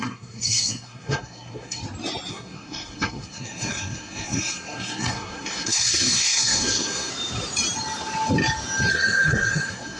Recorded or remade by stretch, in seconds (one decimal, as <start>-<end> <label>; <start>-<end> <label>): 0.0-1.8 remade; 1.8-2.3 recorded; 2.3-7.1 remade; 7.1-8.9 recorded; 8.9-10.0 remade